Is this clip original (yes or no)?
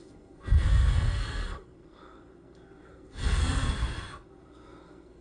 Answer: no